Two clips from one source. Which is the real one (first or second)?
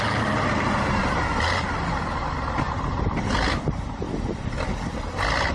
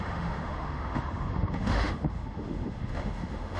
first